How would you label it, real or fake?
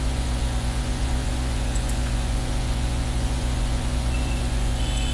fake